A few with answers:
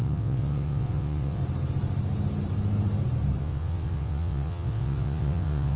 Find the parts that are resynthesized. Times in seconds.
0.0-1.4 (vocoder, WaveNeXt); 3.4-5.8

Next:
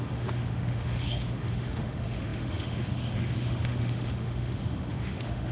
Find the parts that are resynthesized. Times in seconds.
0.0-5.5 (autoencoder, DAC-VAE)

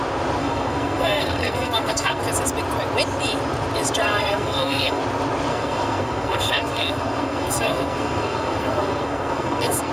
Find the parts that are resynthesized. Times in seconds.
0.4-2.2 (codec, SNAC); 4.0-5.0; 5.5-9.9

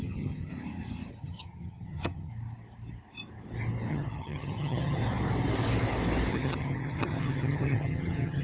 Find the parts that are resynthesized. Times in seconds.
0.0-0.5 (vocoder, HiFi-GAN); 1.1-2.3; 3.9-5.0; 6.3-8.4

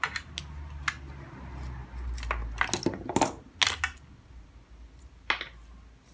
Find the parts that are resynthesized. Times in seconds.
none

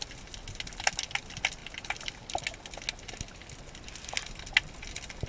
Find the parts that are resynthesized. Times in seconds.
1.6-2.4 (vocoder, BigVGAN v2)

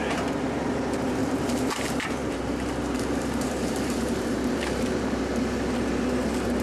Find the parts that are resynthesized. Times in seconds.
1.2-5.2 (vocoder, BigVGAN v2)

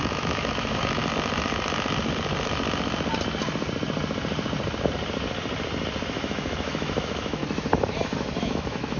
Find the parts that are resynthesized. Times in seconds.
0.0-1.0 (autoencoder, DAC-VAE); 6.0-7.4; 8.4-9.0